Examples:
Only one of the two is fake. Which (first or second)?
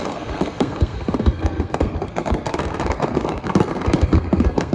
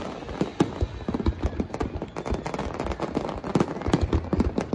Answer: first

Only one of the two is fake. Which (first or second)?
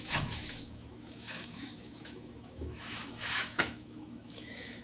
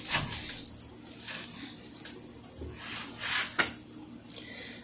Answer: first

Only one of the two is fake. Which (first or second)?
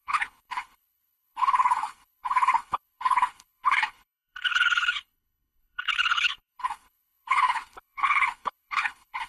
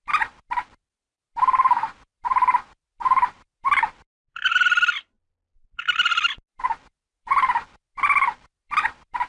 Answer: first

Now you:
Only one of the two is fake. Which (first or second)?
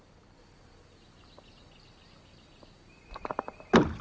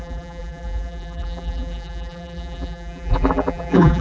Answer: second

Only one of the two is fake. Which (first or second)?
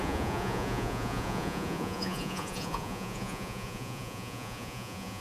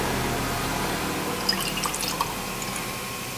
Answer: first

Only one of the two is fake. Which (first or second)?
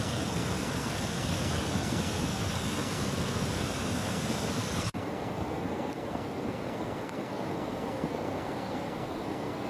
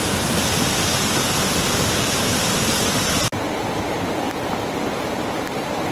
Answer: first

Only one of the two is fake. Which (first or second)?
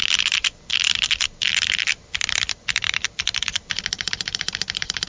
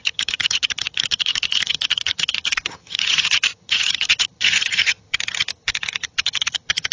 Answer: second